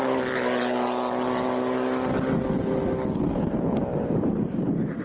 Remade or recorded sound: recorded